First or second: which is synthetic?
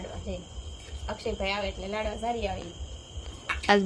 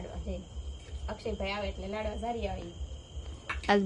first